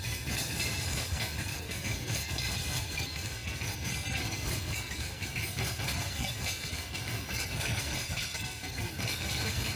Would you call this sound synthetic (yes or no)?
yes